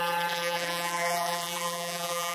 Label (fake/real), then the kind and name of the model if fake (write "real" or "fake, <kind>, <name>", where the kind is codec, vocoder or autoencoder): fake, vocoder, BigVGAN v2